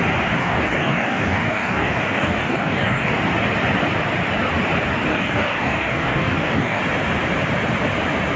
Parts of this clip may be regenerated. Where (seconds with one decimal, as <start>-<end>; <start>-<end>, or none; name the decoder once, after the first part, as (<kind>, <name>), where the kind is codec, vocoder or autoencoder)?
0.4-3.2 (codec, DAC); 5.1-6.8